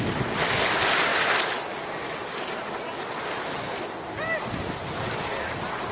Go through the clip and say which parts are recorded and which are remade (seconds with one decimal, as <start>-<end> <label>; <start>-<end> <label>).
0.0-5.9 recorded